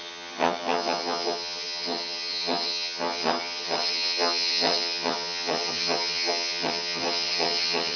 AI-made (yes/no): yes